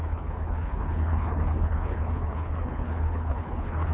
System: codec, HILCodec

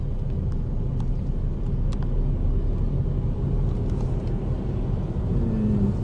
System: none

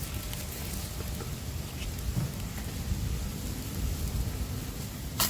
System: none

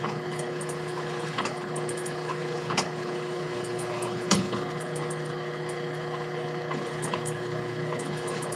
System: codec, HILCodec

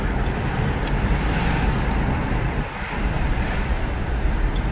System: vocoder, BigVGAN v2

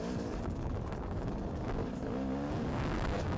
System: codec, DAC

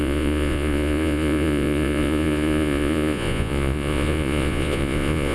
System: vocoder, Vocos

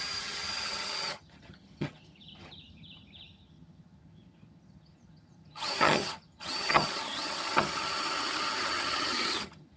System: vocoder, HiFi-GAN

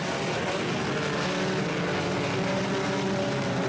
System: none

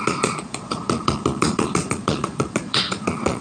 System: vocoder, Vocos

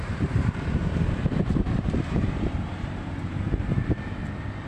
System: vocoder, BigVGAN v2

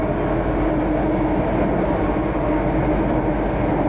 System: none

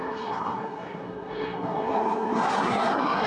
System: codec, SNAC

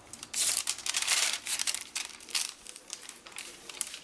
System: vocoder, BigVGAN v2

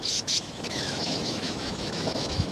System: autoencoder, DAC-VAE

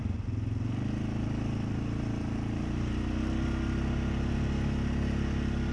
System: none